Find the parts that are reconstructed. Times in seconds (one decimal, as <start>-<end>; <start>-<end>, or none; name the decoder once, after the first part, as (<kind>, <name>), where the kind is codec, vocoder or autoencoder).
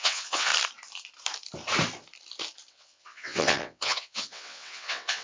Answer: 0.0-0.5 (vocoder, WaveNeXt); 2.7-5.2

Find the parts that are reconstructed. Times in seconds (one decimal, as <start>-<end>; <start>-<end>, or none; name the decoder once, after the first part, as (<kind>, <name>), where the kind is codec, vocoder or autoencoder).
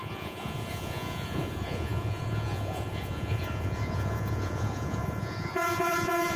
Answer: 0.0-6.4 (vocoder, Vocos)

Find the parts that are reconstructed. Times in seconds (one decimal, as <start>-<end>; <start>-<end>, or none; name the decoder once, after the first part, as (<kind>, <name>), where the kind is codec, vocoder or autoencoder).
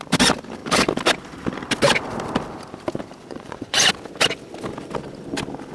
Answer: 3.2-3.9 (vocoder, Vocos)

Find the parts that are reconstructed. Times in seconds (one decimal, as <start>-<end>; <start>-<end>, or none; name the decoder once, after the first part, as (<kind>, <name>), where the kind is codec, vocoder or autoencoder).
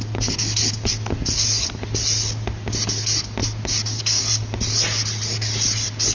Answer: none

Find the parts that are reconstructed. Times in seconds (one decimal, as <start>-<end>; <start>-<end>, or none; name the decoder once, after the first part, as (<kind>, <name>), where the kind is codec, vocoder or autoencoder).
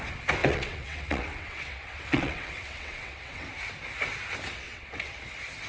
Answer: 0.4-3.5 (vocoder, WaveNeXt); 4.5-5.2